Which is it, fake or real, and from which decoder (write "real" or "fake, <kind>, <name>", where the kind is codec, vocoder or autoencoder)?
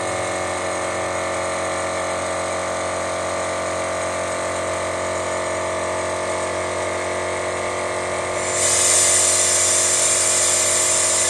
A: real